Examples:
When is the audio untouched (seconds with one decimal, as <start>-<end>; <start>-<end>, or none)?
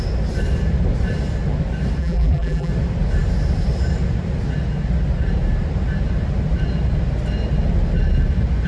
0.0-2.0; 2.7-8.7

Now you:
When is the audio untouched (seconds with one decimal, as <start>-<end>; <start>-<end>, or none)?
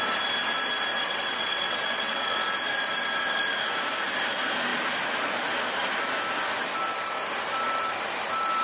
0.0-1.0; 2.4-8.6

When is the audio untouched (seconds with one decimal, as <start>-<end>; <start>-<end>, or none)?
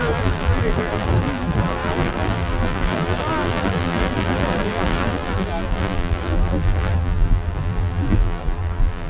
none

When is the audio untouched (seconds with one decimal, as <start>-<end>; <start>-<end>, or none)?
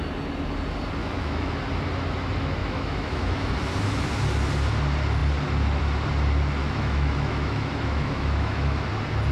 0.0-1.0; 1.5-2.6; 3.5-6.6; 8.9-9.3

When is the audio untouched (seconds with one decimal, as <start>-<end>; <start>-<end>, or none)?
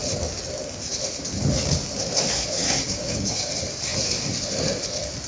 0.0-2.6; 3.5-5.3